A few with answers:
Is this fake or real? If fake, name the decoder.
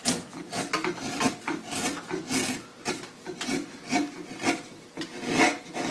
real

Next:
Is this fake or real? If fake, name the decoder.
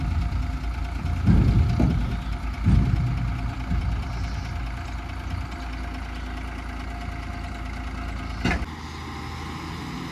real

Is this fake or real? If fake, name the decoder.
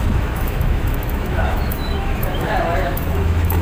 fake, autoencoder, DAC-VAE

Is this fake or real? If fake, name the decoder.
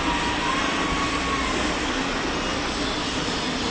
real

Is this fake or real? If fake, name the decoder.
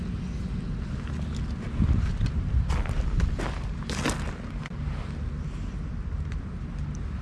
real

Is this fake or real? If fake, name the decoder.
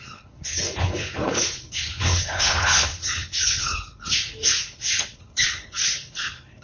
fake, codec, HILCodec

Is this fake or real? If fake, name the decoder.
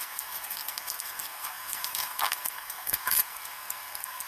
fake, codec, SNAC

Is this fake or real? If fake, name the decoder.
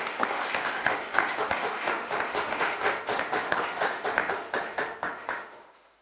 fake, autoencoder, DAC-VAE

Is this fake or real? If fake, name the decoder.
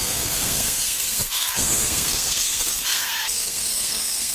fake, codec, SNAC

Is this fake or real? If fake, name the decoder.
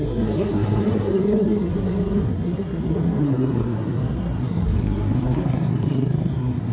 fake, codec, SNAC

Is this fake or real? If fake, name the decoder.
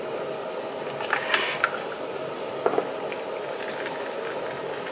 real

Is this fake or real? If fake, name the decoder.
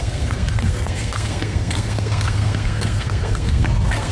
fake, codec, SNAC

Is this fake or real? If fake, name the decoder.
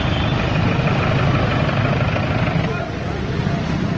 real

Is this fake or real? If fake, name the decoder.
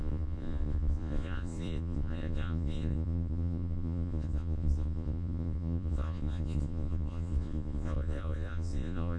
fake, vocoder, Vocos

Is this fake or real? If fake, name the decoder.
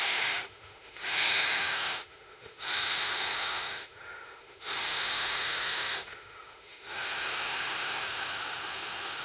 fake, autoencoder, DAC-VAE